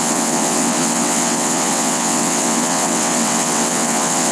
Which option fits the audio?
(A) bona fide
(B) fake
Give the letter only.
B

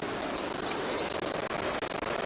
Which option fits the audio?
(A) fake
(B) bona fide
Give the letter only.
B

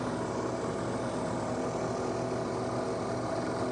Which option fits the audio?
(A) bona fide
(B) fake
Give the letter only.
A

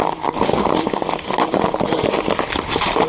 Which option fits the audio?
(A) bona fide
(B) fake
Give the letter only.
B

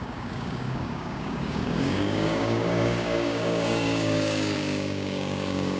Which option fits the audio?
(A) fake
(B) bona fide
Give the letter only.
A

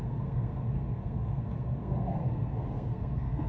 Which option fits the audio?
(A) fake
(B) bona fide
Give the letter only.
A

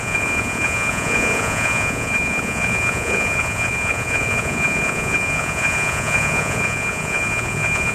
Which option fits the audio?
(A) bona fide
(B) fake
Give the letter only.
B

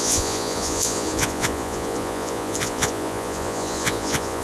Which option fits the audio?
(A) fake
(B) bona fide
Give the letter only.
A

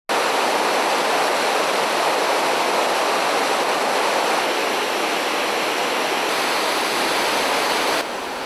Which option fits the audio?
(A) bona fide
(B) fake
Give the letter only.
A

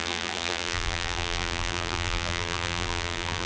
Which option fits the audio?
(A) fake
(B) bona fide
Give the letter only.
A